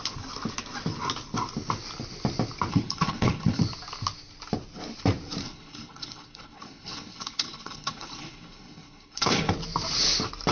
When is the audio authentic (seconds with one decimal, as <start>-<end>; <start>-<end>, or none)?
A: 0.0-2.7; 3.6-5.4; 9.5-10.5

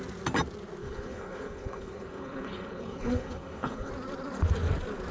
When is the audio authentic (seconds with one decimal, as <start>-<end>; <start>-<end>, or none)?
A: 0.0-0.8; 3.9-5.1

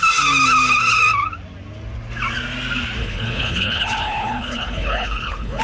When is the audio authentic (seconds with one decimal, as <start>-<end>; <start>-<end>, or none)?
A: 0.0-3.0

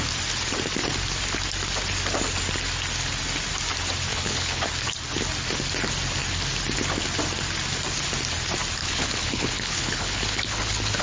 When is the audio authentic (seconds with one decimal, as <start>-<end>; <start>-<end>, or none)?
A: 0.0-4.1; 4.7-8.8

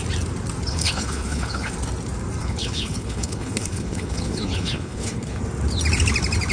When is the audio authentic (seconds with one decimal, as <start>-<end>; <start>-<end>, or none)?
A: 0.0-0.7; 1.7-2.4; 5.4-6.5

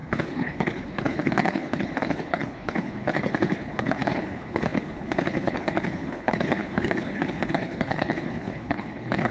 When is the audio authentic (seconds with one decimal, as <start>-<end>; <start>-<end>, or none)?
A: none

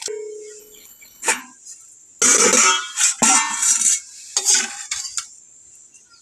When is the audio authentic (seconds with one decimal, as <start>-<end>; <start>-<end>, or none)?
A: 0.0-0.6; 1.4-6.2

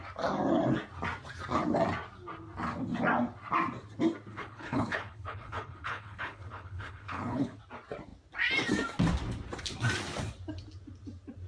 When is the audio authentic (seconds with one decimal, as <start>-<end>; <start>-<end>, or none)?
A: 0.0-4.3; 7.6-11.5